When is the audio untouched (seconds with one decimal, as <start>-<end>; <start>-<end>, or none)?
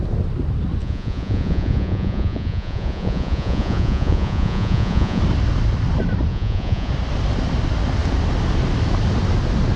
0.0-0.8; 5.2-6.3; 6.9-9.8